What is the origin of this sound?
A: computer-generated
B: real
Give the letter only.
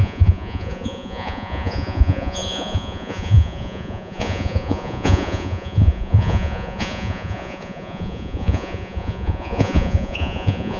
A